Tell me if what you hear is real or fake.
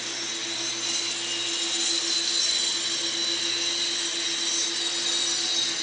real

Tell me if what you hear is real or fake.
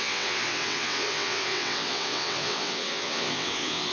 fake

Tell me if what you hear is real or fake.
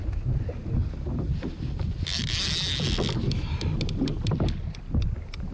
real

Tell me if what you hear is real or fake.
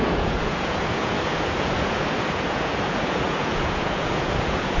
fake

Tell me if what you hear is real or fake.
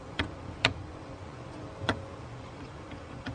fake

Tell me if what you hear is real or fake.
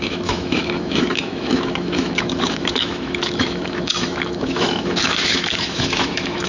fake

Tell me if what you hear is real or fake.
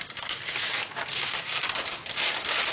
real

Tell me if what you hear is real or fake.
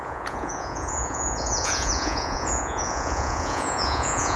fake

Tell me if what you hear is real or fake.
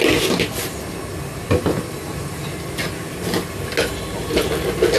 real